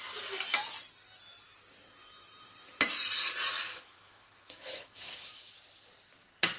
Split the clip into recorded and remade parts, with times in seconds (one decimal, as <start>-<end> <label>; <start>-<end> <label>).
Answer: 0.0-3.7 recorded; 3.7-5.5 remade; 5.5-6.6 recorded